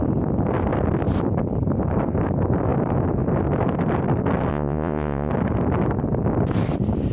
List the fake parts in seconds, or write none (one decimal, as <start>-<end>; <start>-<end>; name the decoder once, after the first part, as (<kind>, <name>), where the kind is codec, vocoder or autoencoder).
4.5-5.3 (vocoder, Vocos)